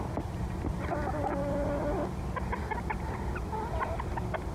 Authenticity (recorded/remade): recorded